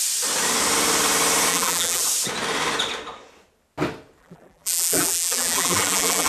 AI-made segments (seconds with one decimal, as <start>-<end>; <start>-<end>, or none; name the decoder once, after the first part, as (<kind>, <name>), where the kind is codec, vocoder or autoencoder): 1.5-2.0 (vocoder, BigVGAN v2); 4.2-6.3

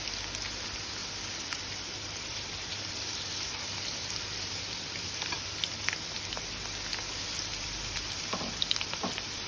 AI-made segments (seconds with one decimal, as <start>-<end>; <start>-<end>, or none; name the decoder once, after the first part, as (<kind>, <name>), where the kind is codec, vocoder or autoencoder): 1.0-6.2 (vocoder, BigVGAN v2); 7.5-9.5

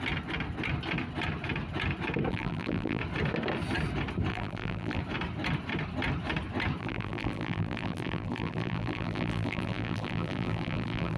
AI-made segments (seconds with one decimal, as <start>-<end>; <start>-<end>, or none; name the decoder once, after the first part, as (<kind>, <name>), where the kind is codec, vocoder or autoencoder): 2.3-3.0 (vocoder, BigVGAN v2); 4.3-5.0; 6.8-11.2

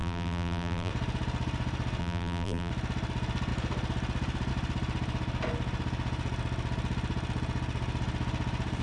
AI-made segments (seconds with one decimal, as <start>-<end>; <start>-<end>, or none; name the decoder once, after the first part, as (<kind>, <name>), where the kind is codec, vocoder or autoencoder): 0.0-0.9 (vocoder, BigVGAN v2); 2.0-2.7